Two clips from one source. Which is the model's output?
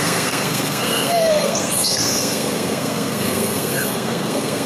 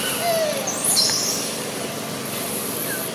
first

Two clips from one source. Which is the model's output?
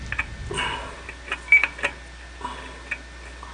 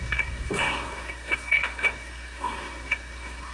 second